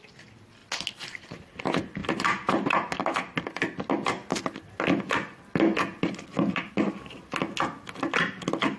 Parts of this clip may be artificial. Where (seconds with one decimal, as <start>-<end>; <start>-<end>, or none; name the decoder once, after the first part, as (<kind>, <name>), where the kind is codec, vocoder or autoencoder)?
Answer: none